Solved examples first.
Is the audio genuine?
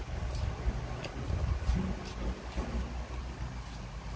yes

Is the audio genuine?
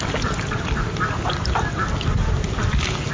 yes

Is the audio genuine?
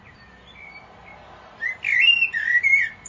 yes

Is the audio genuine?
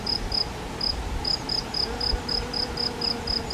yes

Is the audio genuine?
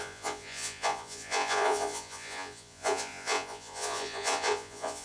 no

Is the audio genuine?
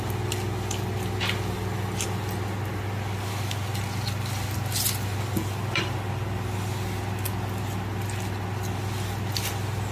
yes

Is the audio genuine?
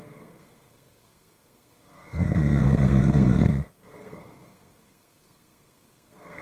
no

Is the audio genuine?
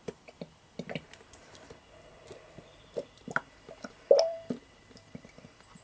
no